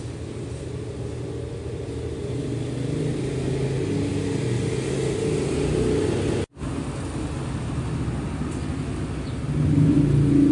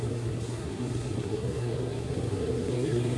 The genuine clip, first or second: first